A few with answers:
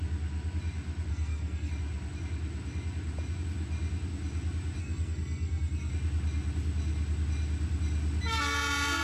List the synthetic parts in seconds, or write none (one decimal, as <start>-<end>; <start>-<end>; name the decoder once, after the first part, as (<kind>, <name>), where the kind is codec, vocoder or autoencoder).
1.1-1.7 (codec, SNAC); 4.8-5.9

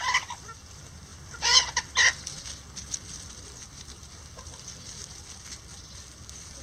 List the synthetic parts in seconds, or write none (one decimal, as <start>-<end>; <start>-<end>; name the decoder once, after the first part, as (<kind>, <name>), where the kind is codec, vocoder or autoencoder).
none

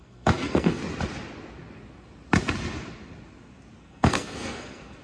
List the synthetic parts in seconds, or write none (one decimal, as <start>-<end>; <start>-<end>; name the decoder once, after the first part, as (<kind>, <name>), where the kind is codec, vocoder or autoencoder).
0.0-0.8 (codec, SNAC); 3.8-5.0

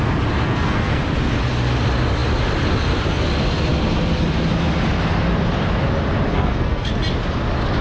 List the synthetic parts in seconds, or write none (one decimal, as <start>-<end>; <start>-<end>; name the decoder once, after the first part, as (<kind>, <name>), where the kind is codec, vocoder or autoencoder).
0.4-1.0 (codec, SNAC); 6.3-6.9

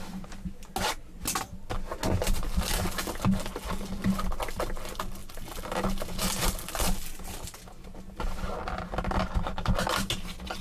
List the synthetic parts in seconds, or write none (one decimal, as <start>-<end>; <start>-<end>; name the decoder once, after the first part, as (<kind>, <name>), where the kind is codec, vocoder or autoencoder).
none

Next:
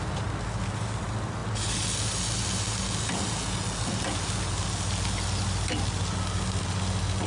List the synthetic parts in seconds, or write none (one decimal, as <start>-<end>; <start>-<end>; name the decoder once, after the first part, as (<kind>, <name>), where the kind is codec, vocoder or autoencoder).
none

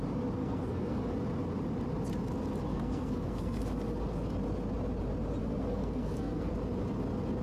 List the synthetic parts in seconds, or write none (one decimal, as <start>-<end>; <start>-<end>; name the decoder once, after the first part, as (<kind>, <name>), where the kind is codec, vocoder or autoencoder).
0.4-1.0 (codec, SNAC); 2.7-3.6; 5.4-6.5